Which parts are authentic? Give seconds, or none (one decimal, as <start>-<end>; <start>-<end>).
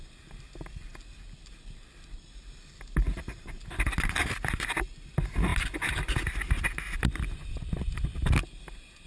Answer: 0.0-9.1